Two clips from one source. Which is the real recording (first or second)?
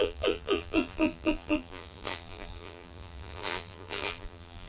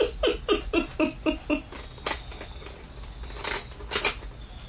second